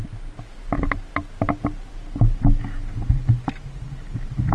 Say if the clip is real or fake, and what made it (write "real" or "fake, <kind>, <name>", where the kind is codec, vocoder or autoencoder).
real